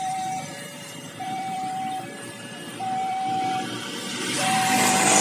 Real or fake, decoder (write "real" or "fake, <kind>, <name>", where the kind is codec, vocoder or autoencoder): fake, vocoder, BigVGAN v2